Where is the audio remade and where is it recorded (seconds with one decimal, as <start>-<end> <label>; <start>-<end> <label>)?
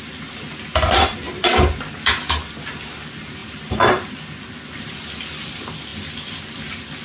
0.0-3.4 recorded; 3.4-4.2 remade; 4.2-7.0 recorded